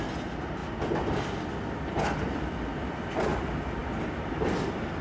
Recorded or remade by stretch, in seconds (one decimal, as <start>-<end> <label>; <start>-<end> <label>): 0.0-5.0 recorded